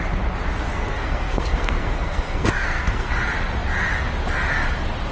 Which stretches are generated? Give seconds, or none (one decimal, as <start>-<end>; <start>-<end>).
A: 0.7-3.1

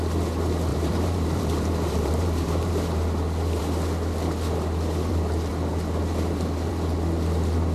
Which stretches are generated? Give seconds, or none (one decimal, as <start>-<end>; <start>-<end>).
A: 0.7-2.7

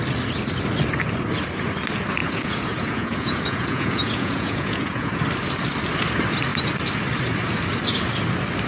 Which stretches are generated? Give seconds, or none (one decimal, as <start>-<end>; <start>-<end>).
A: 2.2-5.2

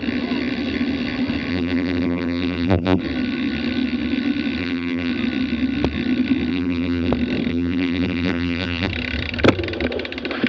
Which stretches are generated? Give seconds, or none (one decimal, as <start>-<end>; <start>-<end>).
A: 1.5-3.0; 4.6-5.1; 6.5-7.1; 7.5-8.9

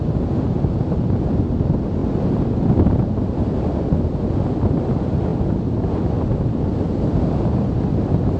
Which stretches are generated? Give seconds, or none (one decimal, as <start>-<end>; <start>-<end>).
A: 0.0-2.0; 4.6-5.3; 6.3-8.4

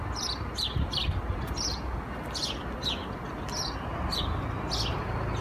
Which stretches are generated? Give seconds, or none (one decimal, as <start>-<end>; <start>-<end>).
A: none

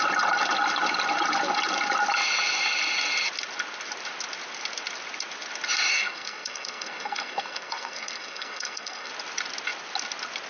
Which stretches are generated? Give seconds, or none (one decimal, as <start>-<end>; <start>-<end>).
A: 5.9-9.1

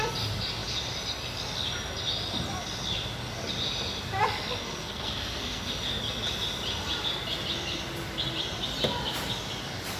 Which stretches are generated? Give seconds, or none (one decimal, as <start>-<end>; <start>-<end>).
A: 4.6-5.7